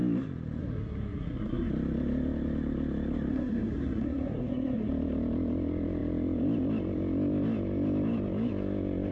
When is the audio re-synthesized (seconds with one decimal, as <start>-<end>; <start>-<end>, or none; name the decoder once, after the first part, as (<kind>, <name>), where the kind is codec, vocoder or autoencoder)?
0.6-1.7 (codec, SNAC); 3.3-4.9